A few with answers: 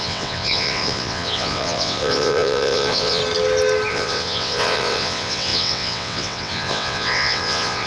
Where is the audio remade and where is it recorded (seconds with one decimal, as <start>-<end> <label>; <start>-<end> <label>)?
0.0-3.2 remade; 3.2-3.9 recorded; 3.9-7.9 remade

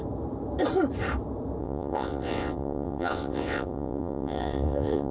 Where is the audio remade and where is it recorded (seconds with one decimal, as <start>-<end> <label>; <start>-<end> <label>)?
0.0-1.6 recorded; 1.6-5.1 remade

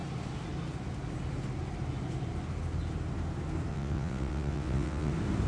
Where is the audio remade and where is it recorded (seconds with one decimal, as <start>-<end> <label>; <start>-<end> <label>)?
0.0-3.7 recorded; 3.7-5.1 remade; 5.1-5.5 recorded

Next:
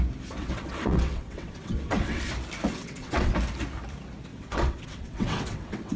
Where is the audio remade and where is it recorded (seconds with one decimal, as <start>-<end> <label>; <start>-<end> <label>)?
0.0-0.4 recorded; 0.4-2.3 remade; 2.3-2.7 recorded; 2.7-3.3 remade; 3.3-4.3 recorded; 4.3-6.0 remade